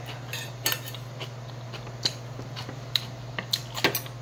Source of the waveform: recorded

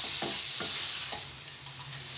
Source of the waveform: recorded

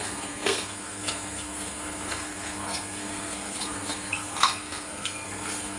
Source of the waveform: remade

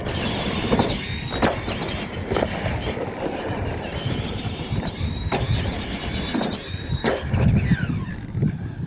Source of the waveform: remade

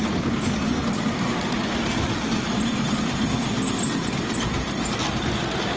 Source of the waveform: recorded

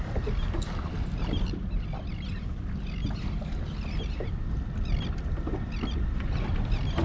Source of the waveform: recorded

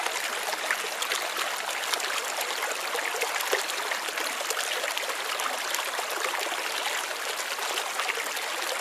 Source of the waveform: recorded